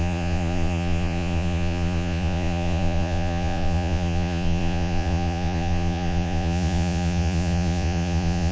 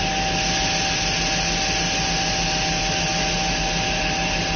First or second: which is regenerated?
first